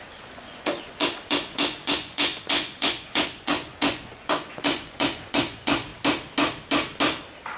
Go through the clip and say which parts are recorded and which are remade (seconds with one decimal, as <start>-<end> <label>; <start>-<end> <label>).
0.0-5.9 remade; 5.9-7.6 recorded